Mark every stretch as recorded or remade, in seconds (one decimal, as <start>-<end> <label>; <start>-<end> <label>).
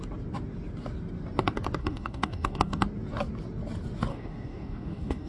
0.0-1.8 recorded; 1.8-2.8 remade; 2.8-4.1 recorded; 4.1-5.3 remade